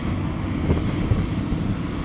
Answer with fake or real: real